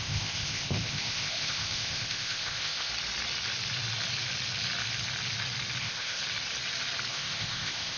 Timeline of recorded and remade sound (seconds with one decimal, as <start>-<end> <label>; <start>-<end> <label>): 0.0-2.9 remade; 2.9-5.8 recorded; 5.8-6.2 remade; 6.2-7.1 recorded; 7.1-8.0 remade